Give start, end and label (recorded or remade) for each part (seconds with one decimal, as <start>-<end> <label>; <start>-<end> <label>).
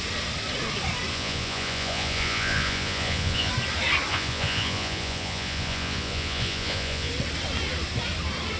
0.0-1.1 recorded; 1.1-3.5 remade; 3.5-4.1 recorded; 4.1-7.1 remade; 7.1-8.6 recorded